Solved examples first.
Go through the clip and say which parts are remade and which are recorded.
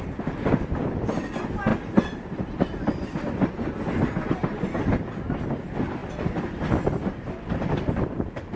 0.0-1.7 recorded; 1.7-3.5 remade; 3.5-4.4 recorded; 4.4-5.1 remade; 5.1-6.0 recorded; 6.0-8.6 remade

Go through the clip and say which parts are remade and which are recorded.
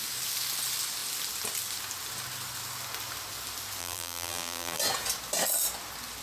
0.0-3.8 recorded; 3.8-4.8 remade; 4.8-6.2 recorded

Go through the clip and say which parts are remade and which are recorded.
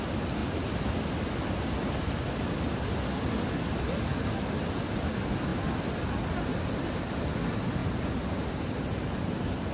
0.0-7.8 recorded; 7.8-9.7 remade